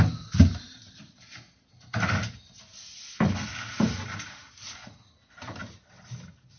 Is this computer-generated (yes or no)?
no